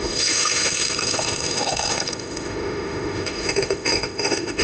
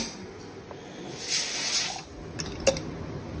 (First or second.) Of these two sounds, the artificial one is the first